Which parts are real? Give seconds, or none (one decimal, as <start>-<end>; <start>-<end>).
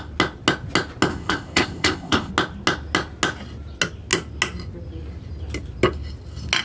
0.0-1.1; 2.3-6.6